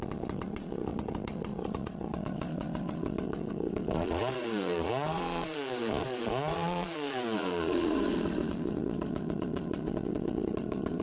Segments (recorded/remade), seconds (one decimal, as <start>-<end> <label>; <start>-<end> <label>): 0.0-11.0 remade